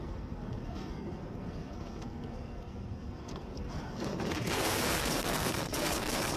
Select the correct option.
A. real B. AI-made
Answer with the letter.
B